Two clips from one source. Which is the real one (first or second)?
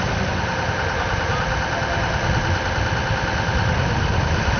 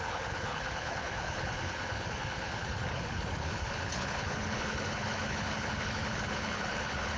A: first